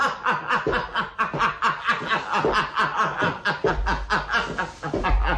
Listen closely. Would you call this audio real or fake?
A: real